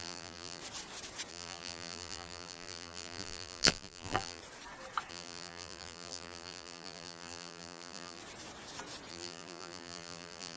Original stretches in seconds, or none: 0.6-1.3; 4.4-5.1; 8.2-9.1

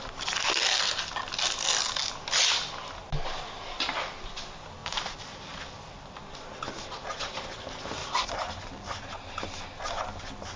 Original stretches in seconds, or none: 0.0-4.8; 6.2-8.0; 8.9-10.6

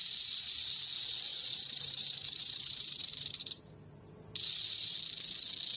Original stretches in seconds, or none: 0.8-1.3; 4.0-5.8